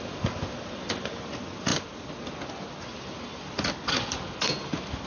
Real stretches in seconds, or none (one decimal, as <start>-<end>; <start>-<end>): 0.0-5.1